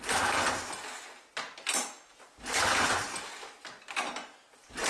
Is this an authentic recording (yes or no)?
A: yes